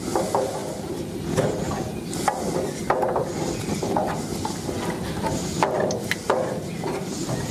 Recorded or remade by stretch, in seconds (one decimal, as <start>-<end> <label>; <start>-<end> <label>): 0.0-7.5 recorded